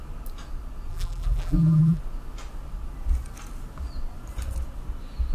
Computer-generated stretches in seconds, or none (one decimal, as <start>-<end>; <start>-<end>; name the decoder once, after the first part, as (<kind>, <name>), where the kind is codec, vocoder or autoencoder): 0.9-2.0 (vocoder, BigVGAN v2)